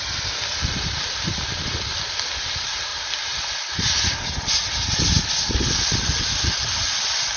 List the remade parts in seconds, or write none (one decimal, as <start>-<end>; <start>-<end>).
2.9-4.3; 6.8-7.4